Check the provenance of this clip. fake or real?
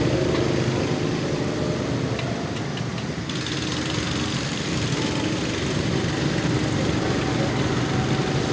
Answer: real